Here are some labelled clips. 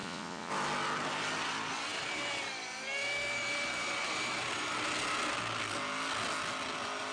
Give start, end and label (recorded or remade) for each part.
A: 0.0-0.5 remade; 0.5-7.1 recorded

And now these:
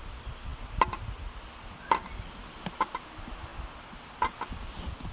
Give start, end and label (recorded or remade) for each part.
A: 0.0-5.1 recorded

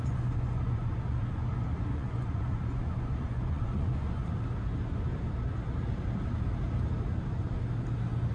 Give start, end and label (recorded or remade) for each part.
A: 0.0-1.4 remade; 1.4-1.9 recorded; 1.9-4.2 remade; 4.2-8.3 recorded

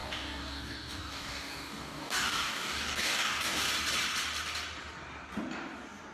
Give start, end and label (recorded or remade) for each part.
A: 0.0-3.7 remade; 3.7-6.1 recorded

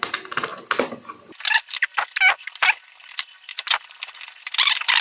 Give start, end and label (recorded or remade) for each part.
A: 0.0-5.0 recorded

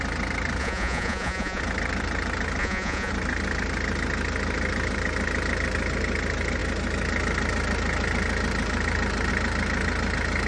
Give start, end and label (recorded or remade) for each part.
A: 0.0-0.6 recorded; 0.6-1.6 remade; 1.6-2.6 recorded; 2.6-3.1 remade; 3.1-10.5 recorded

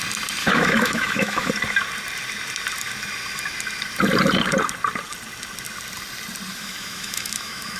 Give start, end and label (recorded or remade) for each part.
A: 0.0-0.4 recorded; 0.4-1.5 remade; 1.5-6.5 recorded; 6.5-7.8 remade